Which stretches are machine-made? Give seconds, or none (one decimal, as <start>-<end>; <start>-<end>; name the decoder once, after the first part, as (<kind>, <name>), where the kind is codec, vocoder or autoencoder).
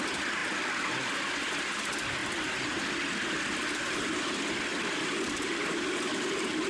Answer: none